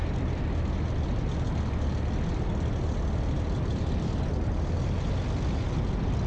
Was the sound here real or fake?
real